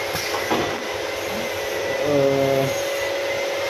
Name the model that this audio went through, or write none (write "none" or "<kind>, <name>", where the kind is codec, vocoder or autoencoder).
none